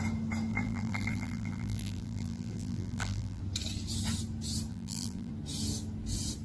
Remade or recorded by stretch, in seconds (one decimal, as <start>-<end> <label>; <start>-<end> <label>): 0.0-0.5 recorded; 0.5-3.4 remade; 3.4-4.7 recorded; 4.7-5.3 remade; 5.3-6.4 recorded